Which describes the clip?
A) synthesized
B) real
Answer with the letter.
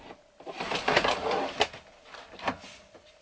B